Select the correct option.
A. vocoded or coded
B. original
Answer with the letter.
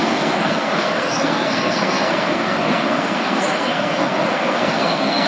A